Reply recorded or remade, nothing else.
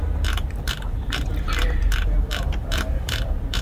remade